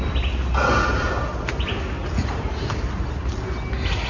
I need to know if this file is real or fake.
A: real